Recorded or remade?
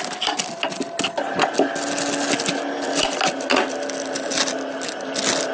recorded